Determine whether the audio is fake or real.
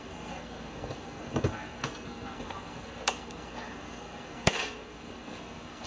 fake